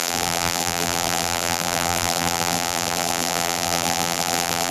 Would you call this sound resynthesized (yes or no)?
yes